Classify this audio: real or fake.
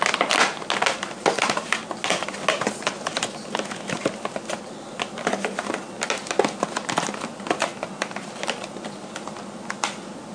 real